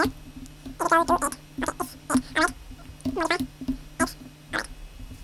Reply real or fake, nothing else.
real